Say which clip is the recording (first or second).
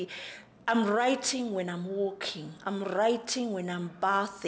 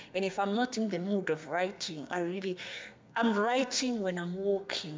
first